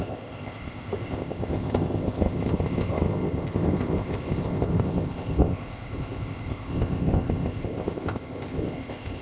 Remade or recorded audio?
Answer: remade